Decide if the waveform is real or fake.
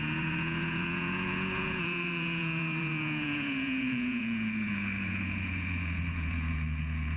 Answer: fake